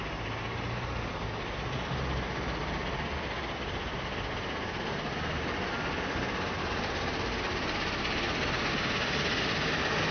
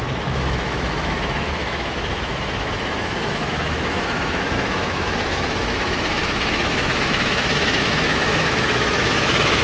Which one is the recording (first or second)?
first